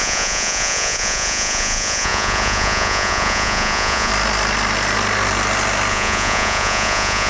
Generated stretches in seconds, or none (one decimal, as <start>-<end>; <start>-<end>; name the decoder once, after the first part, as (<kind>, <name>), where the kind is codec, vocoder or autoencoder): 0.0-4.1 (vocoder, Vocos); 5.9-7.3